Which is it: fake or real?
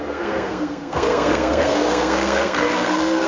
fake